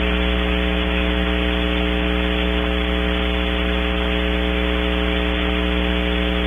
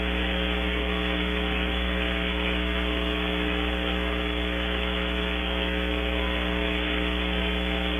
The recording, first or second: first